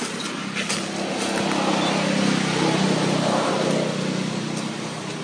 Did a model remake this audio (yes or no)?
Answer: no